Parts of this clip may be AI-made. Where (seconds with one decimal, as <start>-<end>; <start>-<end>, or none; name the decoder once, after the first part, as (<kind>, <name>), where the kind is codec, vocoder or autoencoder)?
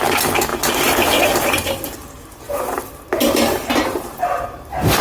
0.5-2.4 (vocoder, BigVGAN v2); 3.2-5.0